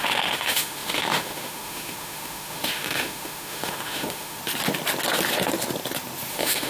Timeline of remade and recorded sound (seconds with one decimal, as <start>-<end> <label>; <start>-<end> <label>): 0.0-4.4 remade; 4.4-6.3 recorded; 6.3-6.7 remade